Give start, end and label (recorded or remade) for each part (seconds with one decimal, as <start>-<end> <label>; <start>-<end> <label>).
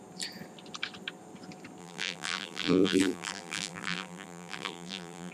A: 0.0-1.8 recorded; 1.8-5.3 remade